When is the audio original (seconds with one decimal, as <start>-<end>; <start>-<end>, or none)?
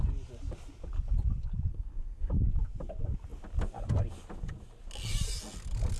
0.0-1.7; 2.3-6.0